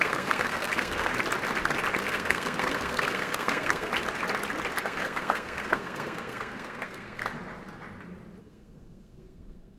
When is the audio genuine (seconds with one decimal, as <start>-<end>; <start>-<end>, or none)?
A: 1.1-2.0; 3.9-4.8; 7.2-8.4